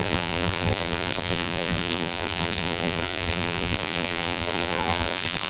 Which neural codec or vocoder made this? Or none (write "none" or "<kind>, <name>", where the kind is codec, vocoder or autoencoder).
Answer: vocoder, BigVGAN v2